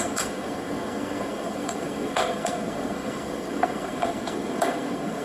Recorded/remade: remade